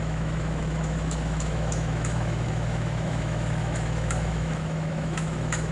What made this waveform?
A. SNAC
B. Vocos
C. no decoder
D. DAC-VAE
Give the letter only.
D